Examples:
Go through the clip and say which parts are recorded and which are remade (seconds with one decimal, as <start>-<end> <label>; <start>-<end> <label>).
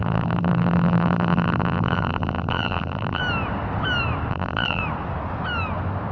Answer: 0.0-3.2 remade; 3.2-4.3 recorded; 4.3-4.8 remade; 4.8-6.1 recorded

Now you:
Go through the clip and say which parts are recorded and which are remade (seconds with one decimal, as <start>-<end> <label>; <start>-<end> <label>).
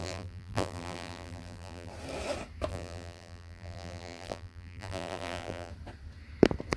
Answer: 0.0-1.9 remade; 1.9-2.7 recorded; 2.7-5.7 remade; 5.7-6.8 recorded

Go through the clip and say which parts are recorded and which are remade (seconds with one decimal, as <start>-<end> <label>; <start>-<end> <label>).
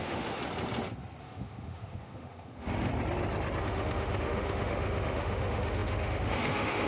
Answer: 0.0-0.4 remade; 0.4-1.2 recorded; 1.2-2.9 remade; 2.9-3.6 recorded; 3.6-6.9 remade